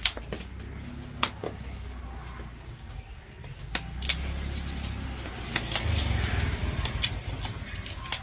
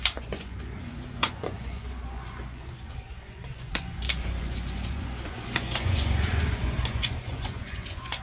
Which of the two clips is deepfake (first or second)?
second